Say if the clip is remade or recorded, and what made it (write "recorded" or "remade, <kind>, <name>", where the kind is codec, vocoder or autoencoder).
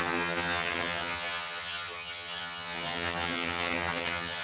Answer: remade, vocoder, HiFi-GAN